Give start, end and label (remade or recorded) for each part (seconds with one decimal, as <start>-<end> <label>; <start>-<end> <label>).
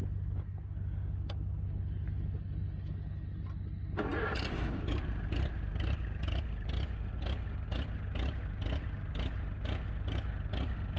0.0-11.0 recorded